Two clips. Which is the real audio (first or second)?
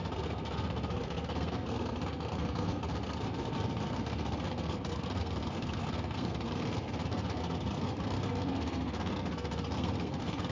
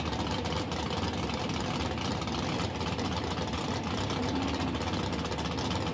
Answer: second